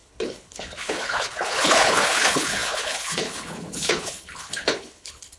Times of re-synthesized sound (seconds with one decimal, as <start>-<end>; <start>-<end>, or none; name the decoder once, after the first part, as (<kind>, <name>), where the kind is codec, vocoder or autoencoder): 0.0-5.4 (codec, HILCodec)